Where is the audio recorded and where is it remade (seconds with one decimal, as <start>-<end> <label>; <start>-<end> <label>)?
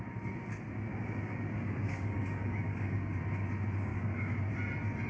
0.0-0.9 recorded; 0.9-3.2 remade; 3.2-3.9 recorded; 3.9-4.5 remade; 4.5-5.1 recorded